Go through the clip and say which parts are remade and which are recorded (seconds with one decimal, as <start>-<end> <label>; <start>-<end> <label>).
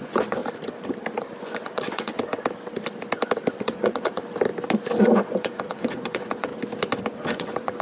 0.0-0.4 remade; 0.4-1.4 recorded; 1.4-2.1 remade; 2.1-3.6 recorded; 3.6-4.2 remade; 4.2-5.0 recorded; 5.0-6.5 remade; 6.5-7.2 recorded; 7.2-7.8 remade